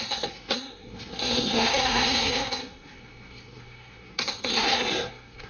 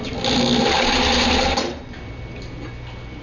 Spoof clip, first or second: first